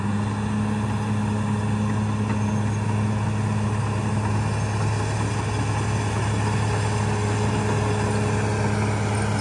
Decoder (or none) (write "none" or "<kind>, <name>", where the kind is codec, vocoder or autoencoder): none